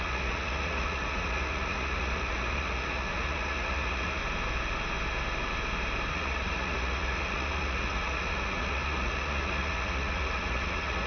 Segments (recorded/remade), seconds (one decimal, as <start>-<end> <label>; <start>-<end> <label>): 0.0-4.2 remade; 4.2-6.1 recorded; 6.1-11.1 remade